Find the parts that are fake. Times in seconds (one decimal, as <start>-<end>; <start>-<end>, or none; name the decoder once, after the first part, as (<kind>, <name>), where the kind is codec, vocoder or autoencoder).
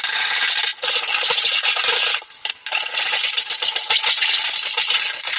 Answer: none